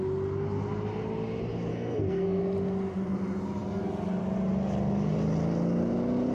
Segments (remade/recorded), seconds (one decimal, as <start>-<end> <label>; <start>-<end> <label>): 0.0-1.7 recorded; 1.7-2.4 remade; 2.4-6.3 recorded